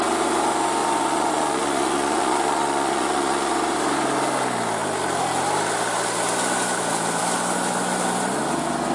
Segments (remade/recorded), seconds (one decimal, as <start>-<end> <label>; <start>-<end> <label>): 0.0-0.8 recorded; 0.8-3.5 remade; 3.5-8.9 recorded